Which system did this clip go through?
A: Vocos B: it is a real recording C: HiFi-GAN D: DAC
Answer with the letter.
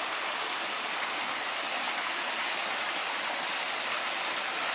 B